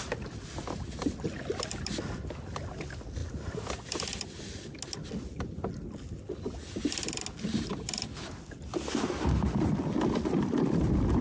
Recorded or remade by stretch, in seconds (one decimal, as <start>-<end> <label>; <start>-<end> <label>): 0.0-11.2 recorded